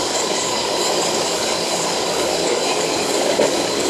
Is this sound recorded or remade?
remade